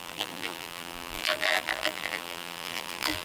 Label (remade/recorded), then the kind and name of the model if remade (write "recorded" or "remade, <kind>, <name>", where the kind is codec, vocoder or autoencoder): remade, vocoder, BigVGAN v2